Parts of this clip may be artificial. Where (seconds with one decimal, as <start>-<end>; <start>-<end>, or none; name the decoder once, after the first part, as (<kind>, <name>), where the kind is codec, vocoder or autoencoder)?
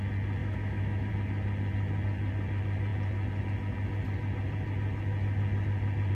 0.4-1.1 (autoencoder, DAC-VAE)